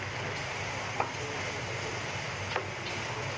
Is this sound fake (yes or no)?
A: no